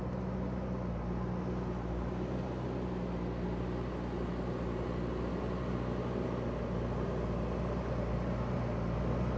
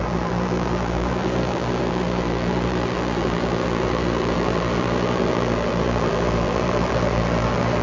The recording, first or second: first